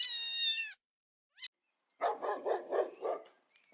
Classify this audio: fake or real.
real